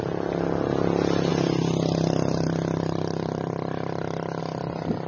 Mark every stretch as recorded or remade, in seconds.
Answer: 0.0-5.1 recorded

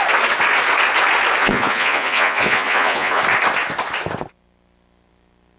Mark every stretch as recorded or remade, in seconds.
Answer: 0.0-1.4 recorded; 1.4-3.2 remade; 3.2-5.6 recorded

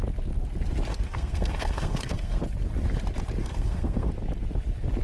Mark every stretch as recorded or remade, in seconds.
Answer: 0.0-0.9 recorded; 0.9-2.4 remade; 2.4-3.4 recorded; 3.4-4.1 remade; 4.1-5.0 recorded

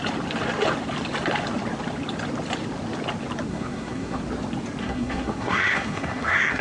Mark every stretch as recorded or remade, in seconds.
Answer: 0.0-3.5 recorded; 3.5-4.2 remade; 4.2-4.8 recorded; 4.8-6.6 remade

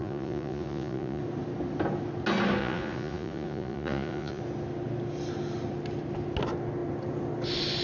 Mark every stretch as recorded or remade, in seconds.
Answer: 0.0-1.2 remade; 1.2-2.6 recorded; 2.6-4.4 remade; 4.4-7.8 recorded